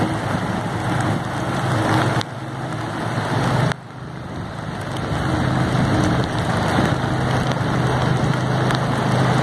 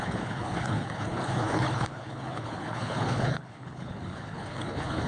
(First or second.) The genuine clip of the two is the first